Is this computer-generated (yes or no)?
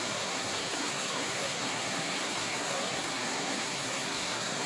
yes